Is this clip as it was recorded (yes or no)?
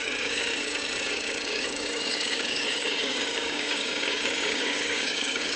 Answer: no